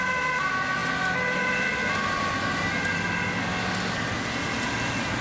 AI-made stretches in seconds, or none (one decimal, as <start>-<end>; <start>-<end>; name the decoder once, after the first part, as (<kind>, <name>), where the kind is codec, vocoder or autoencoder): none